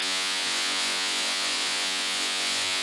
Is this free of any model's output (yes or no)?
no